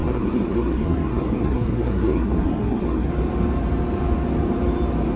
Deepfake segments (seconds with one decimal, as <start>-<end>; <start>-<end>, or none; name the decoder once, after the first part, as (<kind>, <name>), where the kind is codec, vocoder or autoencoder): 0.0-3.1 (codec, SNAC)